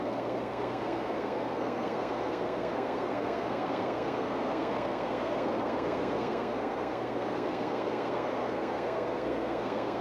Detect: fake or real fake